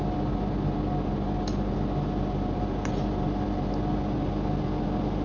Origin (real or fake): real